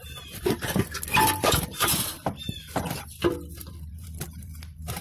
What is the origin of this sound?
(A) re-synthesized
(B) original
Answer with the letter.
A